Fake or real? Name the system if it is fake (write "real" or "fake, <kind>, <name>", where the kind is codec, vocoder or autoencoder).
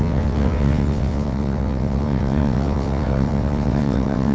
fake, vocoder, WaveNeXt